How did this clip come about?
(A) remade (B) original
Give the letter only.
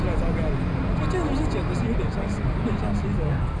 B